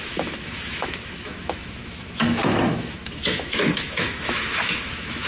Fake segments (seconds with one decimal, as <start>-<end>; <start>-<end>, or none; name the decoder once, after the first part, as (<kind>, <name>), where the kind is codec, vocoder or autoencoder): 0.0-5.3 (autoencoder, DAC-VAE)